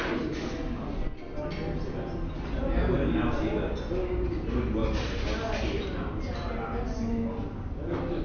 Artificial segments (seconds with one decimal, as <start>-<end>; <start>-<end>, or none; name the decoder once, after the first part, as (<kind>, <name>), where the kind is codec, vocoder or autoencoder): none